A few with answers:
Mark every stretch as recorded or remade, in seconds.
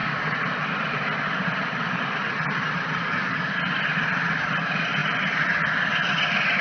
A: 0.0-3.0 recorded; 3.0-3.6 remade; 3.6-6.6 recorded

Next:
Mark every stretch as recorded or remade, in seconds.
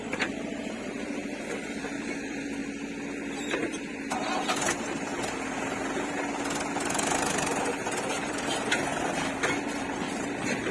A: 0.0-2.6 remade; 2.6-3.3 recorded; 3.3-5.1 remade; 5.1-7.6 recorded; 7.6-8.9 remade; 8.9-9.8 recorded; 9.8-10.7 remade